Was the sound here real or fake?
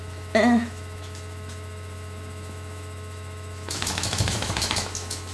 fake